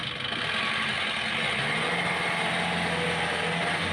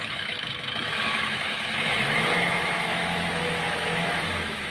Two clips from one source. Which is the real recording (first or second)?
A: first